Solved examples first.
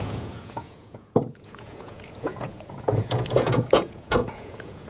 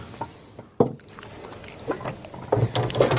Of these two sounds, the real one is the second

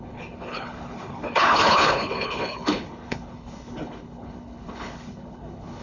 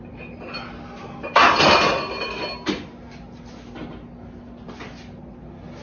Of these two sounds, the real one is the second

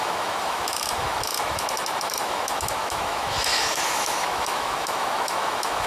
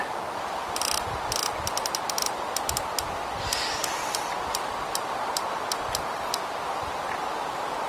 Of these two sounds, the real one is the second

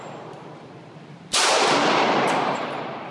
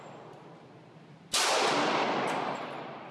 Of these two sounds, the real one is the second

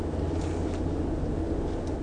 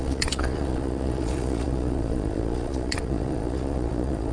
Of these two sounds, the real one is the first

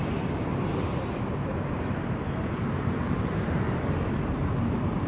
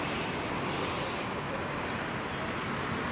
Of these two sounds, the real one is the second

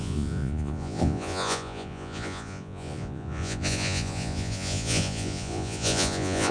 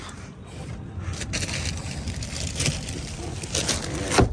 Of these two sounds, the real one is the second